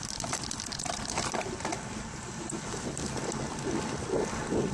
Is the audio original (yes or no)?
yes